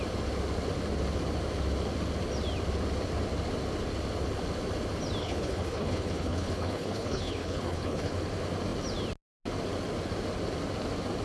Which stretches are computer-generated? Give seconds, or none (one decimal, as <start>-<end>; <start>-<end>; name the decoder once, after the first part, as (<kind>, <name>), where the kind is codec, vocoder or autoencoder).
5.2-8.1 (codec, HILCodec)